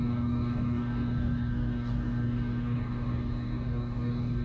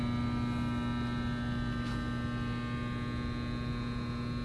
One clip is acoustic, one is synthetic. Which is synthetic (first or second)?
first